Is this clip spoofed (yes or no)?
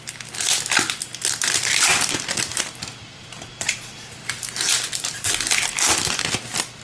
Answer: no